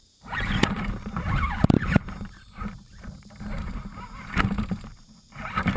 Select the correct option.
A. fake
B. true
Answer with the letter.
A